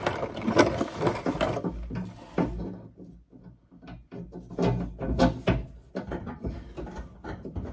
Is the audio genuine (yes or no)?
yes